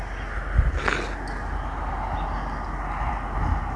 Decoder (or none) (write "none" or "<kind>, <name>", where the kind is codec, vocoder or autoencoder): none